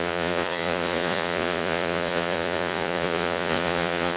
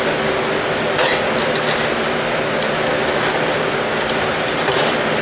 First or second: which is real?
second